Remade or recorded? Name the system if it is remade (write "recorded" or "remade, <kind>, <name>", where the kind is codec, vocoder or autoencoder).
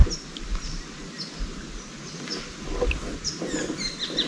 recorded